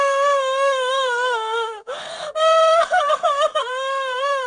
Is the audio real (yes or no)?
no